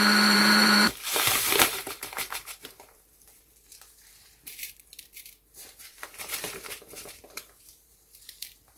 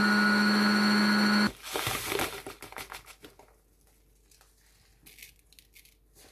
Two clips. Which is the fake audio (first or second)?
first